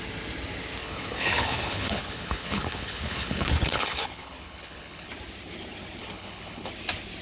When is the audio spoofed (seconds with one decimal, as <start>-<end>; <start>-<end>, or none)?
0.8-5.1; 6.0-6.7